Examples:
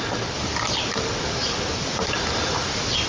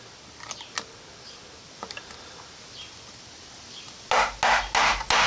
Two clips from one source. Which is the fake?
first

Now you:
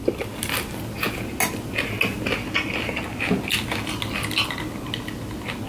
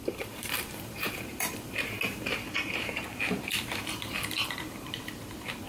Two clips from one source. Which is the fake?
second